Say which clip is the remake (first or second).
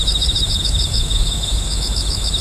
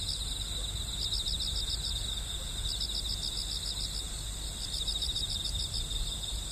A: first